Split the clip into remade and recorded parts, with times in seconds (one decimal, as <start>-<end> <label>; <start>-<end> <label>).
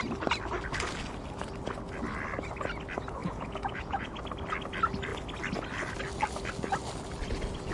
0.0-3.2 recorded; 3.2-4.2 remade; 4.2-7.7 recorded